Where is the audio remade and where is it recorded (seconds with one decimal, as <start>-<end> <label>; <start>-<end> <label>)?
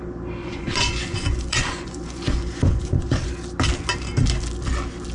0.0-0.4 recorded; 0.4-3.4 remade; 3.4-5.1 recorded